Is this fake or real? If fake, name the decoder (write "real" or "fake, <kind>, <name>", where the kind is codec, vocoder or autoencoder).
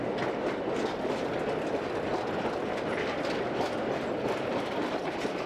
real